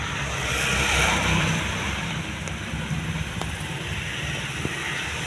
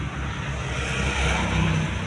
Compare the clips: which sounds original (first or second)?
second